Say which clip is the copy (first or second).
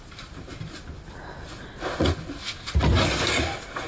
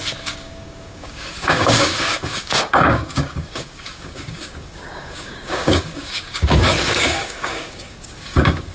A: second